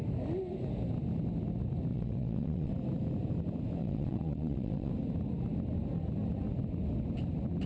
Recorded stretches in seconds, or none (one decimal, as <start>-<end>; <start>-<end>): 0.0-1.9; 2.7-3.8; 4.9-7.7